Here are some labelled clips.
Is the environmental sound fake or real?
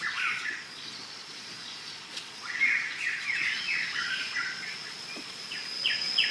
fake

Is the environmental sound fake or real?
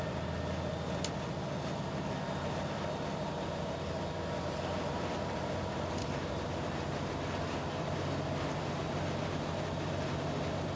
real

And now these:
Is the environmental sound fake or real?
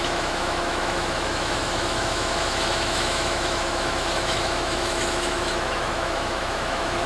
fake